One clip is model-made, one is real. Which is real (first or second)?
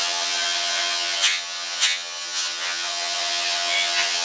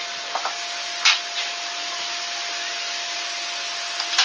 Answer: second